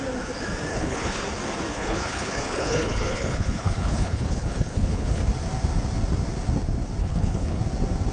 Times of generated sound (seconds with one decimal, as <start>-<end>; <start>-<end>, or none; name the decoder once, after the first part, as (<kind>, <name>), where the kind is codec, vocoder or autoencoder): 0.7-1.2 (codec, HILCodec); 1.7-5.2; 7.0-7.6